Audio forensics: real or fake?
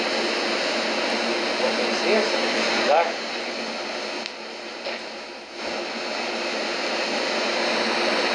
real